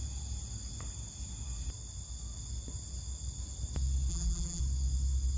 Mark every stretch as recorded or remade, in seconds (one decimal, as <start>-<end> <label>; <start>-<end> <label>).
0.0-4.1 recorded; 4.1-4.6 remade; 4.6-5.4 recorded